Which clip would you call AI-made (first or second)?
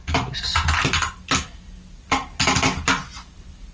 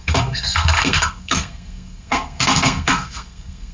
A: second